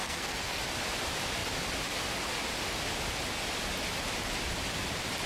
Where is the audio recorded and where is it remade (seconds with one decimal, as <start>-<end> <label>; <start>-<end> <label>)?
0.0-0.6 remade; 0.6-5.3 recorded